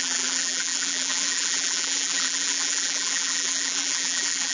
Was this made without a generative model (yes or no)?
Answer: no